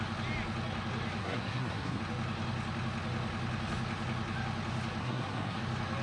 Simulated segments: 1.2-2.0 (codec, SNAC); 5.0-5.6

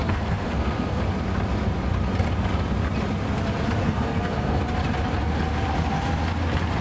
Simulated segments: 0.0-1.0 (codec, SNAC); 3.8-4.6

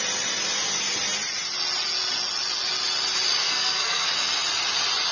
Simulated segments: 3.4-4.1 (codec, SNAC)

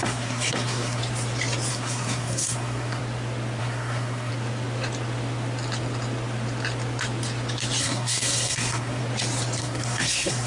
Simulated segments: 0.0-1.0 (codec, SNAC); 1.7-3.0; 3.6-4.3; 7.8-9.0; 9.6-10.5

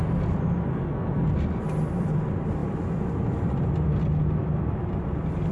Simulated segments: 0.7-1.3 (codec, SNAC)

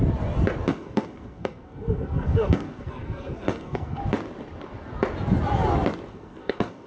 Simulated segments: 0.7-4.0 (codec, SNAC); 6.1-6.9